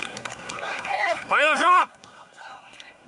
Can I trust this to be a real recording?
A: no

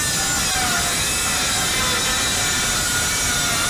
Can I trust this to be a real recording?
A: yes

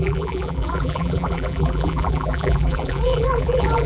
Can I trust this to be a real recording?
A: no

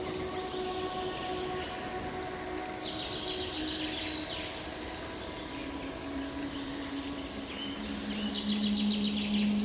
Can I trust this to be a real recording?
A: yes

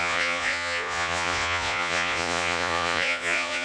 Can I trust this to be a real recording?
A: no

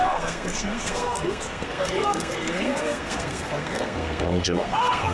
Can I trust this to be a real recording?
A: no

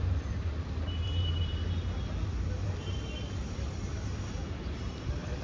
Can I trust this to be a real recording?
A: no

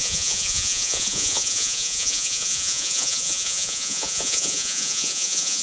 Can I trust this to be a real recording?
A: no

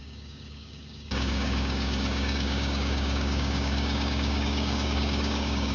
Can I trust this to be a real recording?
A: no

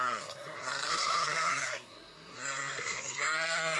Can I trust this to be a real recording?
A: no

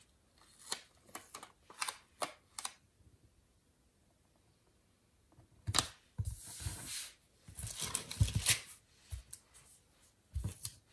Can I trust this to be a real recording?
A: yes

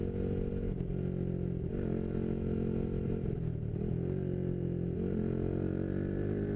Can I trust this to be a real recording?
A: yes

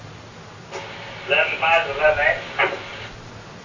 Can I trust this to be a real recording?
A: yes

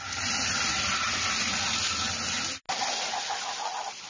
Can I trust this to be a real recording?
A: yes